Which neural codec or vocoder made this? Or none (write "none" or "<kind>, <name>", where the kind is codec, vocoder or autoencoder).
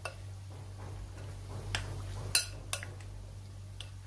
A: none